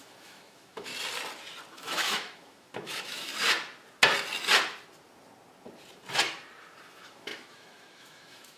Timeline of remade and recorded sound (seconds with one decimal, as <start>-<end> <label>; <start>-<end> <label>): 0.0-0.9 remade; 0.9-1.7 recorded; 1.7-3.3 remade; 3.3-6.8 recorded; 6.8-8.6 remade